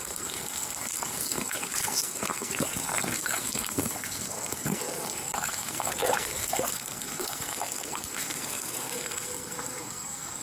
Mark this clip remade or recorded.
remade